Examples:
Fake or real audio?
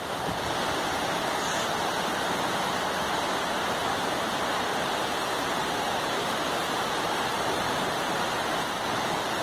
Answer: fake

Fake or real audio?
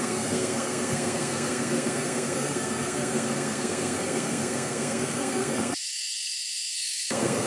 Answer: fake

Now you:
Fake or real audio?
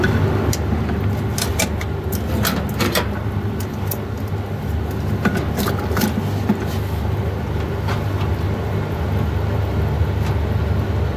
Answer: real